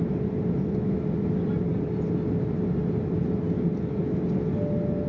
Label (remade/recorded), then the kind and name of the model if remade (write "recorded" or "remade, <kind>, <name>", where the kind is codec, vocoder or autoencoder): recorded